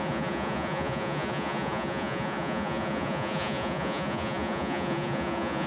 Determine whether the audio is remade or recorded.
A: remade